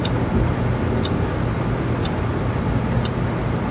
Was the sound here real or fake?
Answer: real